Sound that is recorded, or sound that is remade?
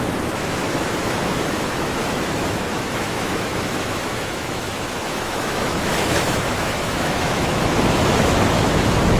remade